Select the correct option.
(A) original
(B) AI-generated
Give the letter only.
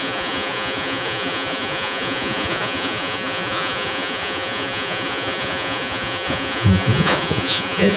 B